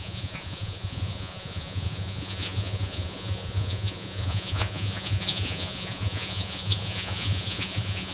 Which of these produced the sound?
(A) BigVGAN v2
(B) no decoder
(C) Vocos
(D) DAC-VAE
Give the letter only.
C